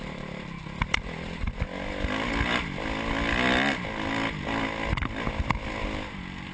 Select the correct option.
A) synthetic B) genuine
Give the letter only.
B